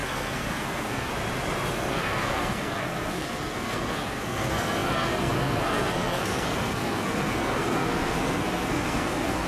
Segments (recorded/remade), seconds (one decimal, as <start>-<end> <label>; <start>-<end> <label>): 0.0-1.1 remade; 1.1-1.7 recorded; 1.7-9.5 remade